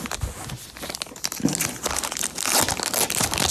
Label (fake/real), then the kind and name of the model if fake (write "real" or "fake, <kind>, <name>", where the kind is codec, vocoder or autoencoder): real